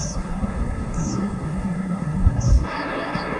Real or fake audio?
fake